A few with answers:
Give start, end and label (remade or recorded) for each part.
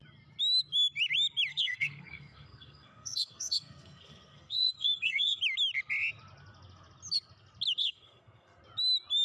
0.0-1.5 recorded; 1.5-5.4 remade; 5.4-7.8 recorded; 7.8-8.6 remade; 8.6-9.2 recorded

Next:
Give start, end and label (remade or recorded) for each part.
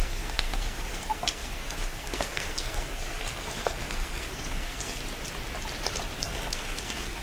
0.0-5.0 remade; 5.0-6.2 recorded; 6.2-7.2 remade